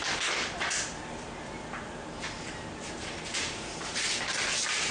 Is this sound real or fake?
fake